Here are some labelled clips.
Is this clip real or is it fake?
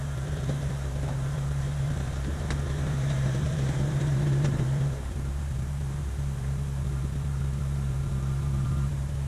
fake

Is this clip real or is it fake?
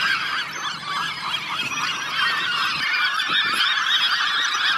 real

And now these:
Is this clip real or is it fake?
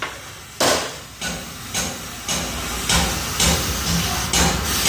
real